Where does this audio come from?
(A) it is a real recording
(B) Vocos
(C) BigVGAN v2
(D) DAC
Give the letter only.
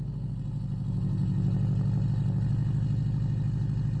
A